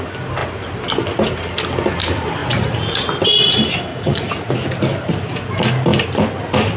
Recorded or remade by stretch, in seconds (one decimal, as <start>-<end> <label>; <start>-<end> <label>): 0.0-2.4 recorded; 2.4-3.1 remade; 3.1-3.9 recorded; 3.9-4.5 remade; 4.5-6.8 recorded